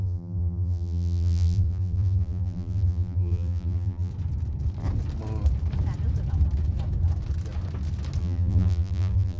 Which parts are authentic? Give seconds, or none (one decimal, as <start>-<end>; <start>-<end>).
4.1-8.2